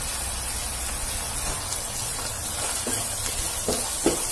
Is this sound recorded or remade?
recorded